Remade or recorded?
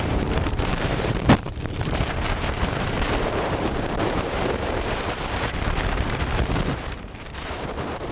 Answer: remade